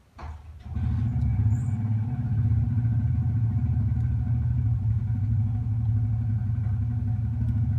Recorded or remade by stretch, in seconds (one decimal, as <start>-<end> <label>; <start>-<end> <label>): 0.0-1.3 recorded; 1.3-5.4 remade; 5.4-7.8 recorded